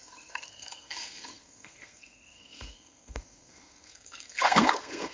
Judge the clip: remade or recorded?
remade